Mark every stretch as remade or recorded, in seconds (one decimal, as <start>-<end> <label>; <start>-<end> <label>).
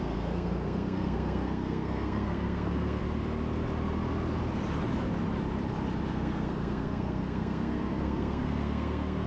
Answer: 0.0-3.0 remade; 3.0-6.1 recorded; 6.1-9.3 remade